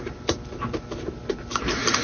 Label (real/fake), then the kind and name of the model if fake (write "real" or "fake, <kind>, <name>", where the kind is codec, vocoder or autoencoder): real